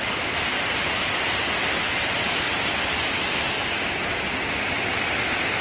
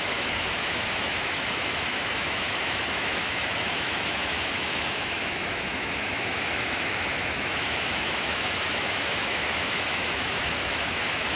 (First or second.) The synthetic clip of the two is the second